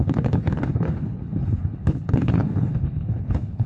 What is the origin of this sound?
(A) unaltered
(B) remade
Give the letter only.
B